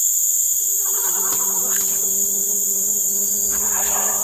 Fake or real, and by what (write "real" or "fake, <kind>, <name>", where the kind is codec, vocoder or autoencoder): real